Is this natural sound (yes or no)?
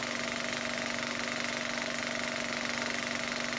yes